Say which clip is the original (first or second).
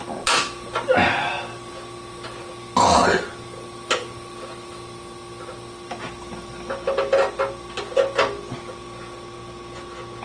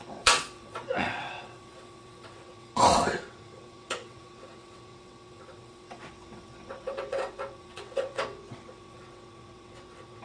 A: first